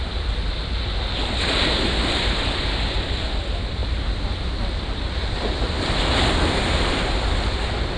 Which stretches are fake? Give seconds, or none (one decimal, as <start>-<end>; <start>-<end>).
none